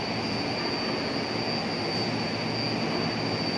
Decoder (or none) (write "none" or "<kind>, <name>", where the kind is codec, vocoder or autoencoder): none